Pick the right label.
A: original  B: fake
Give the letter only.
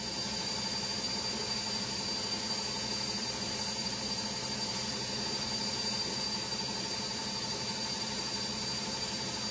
B